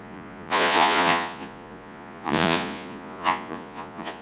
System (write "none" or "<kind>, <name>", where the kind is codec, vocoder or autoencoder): vocoder, Vocos